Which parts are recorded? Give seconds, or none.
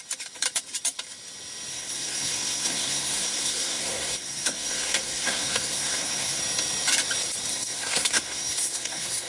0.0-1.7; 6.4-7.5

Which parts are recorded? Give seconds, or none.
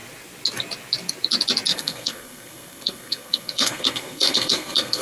0.0-1.7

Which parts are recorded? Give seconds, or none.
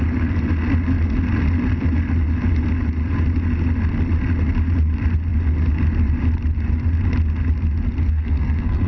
0.0-8.0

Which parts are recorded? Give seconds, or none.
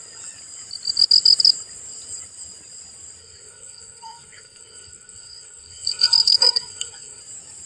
0.0-3.2; 7.2-7.7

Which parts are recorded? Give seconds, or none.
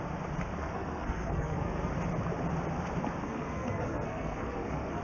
0.0-0.6; 1.9-3.2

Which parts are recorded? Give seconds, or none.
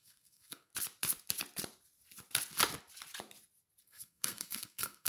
0.7-3.8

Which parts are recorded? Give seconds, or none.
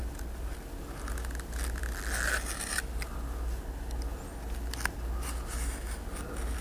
0.0-6.6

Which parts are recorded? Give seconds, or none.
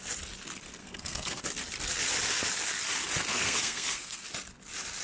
0.0-0.8; 1.4-3.3; 4.2-5.0